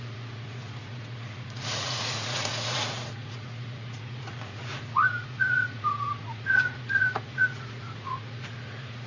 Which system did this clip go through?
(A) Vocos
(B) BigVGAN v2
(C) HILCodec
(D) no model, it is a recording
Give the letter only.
A